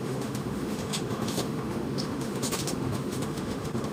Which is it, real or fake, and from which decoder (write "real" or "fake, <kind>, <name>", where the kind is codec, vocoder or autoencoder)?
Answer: fake, autoencoder, DAC-VAE